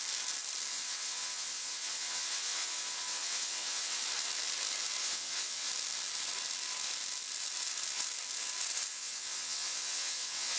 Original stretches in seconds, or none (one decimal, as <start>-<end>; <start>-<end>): 0.0-0.7; 4.0-5.0; 5.7-8.9